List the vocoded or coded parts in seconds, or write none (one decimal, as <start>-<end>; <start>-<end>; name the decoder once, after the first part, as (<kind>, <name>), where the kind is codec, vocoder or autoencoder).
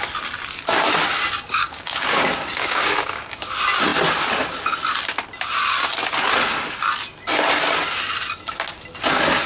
1.6-3.5 (codec, DAC)